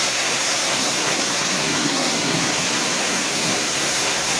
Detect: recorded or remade remade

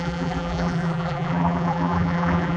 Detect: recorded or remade remade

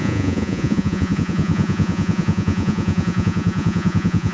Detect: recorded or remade remade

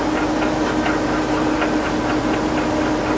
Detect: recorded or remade recorded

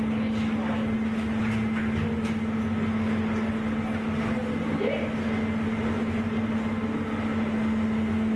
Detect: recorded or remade recorded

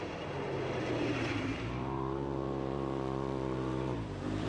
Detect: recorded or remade remade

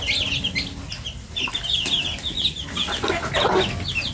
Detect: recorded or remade recorded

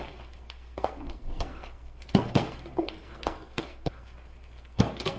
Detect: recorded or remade remade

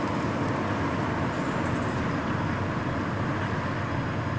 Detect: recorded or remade recorded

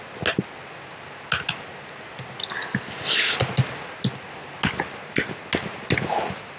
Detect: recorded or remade recorded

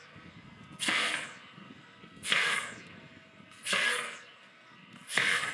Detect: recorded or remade remade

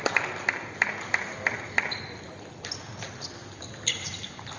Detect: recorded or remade recorded